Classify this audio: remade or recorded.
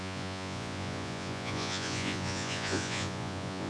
remade